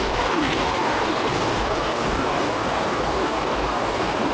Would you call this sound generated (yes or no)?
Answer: yes